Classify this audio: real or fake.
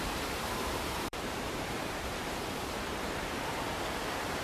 fake